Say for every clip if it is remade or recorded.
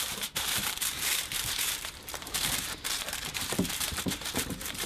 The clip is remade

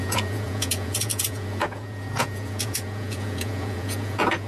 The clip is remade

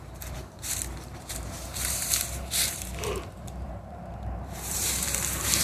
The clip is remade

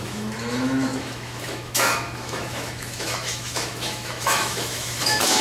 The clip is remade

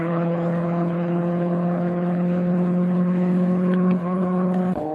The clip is remade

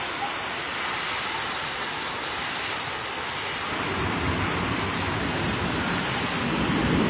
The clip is recorded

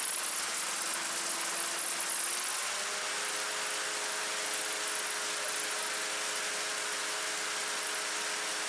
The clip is recorded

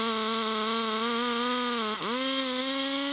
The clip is recorded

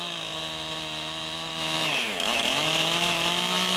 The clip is remade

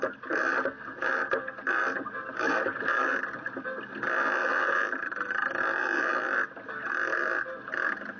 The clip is recorded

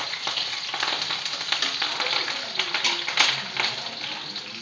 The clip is recorded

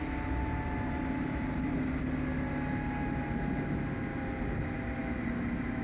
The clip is recorded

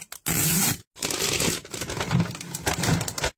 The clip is recorded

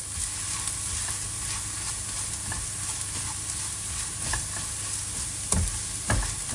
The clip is recorded